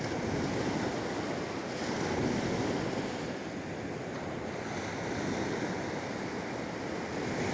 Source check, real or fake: real